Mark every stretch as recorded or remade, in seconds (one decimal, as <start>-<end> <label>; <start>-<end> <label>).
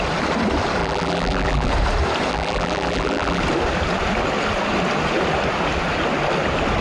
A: 0.0-0.8 recorded; 0.8-1.7 remade; 1.7-2.3 recorded; 2.3-3.4 remade; 3.4-6.8 recorded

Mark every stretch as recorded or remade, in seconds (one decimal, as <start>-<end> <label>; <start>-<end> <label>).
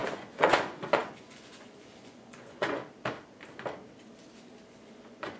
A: 0.0-2.8 remade; 2.8-4.7 recorded; 4.7-5.4 remade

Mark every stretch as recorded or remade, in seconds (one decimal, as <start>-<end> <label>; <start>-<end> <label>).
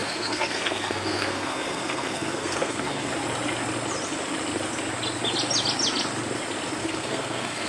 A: 0.0-3.1 remade; 3.1-6.8 recorded; 6.8-7.7 remade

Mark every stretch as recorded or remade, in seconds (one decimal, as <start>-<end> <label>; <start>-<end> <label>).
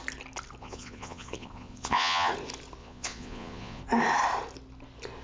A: 0.0-0.6 recorded; 0.6-2.3 remade; 2.3-2.8 recorded; 2.8-3.8 remade; 3.8-5.2 recorded